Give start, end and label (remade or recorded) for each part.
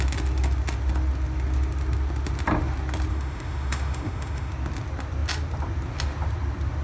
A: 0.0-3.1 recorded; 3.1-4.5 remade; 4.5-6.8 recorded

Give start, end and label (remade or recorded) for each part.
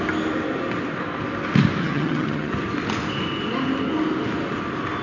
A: 0.0-1.8 recorded; 1.8-2.5 remade; 2.5-5.0 recorded